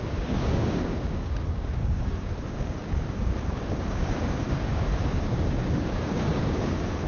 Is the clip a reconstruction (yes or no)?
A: yes